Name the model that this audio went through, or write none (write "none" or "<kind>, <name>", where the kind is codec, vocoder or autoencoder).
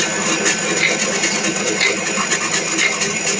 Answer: none